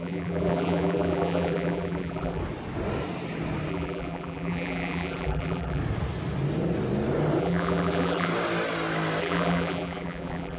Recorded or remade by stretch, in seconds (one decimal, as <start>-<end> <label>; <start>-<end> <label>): 0.0-2.4 remade; 2.4-3.7 recorded; 3.7-5.8 remade; 5.8-7.4 recorded; 7.4-8.3 remade; 8.3-9.2 recorded; 9.2-10.6 remade